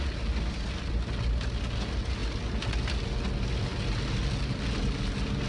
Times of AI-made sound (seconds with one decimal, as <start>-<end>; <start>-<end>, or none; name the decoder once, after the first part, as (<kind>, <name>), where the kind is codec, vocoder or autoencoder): none